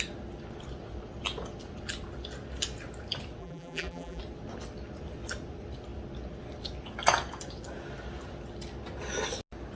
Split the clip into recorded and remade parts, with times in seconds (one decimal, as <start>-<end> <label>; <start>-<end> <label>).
0.0-3.4 recorded; 3.4-4.2 remade; 4.2-9.8 recorded